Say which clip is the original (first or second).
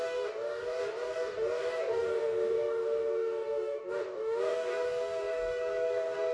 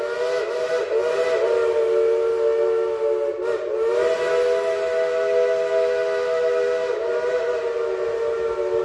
second